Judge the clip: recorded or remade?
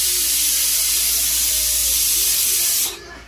recorded